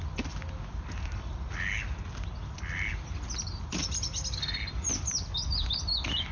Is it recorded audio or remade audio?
recorded